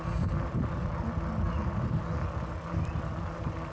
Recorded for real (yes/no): yes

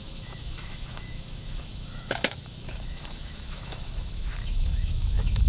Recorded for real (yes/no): no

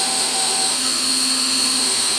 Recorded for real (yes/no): no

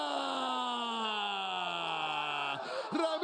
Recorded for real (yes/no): yes